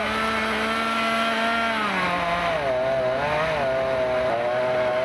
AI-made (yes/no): no